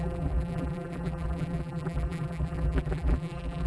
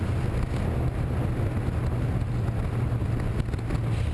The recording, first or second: second